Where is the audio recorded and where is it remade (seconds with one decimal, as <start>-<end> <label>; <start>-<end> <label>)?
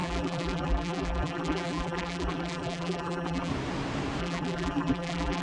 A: 0.0-3.5 remade; 3.5-4.2 recorded; 4.2-5.4 remade